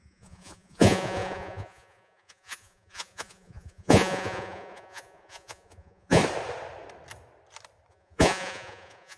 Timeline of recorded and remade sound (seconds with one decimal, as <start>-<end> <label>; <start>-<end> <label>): 0.0-6.2 remade; 6.2-7.9 recorded; 7.9-9.2 remade